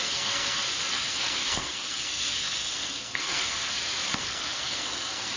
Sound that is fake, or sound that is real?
fake